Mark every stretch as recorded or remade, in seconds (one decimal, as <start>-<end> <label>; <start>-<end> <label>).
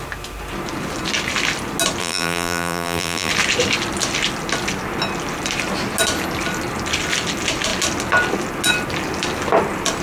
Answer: 0.0-2.0 recorded; 2.0-3.3 remade; 3.3-10.0 recorded